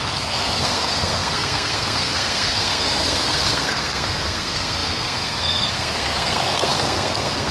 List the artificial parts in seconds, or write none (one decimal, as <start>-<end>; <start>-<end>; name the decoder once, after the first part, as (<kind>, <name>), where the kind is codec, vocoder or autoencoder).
0.0-7.5 (codec, SNAC)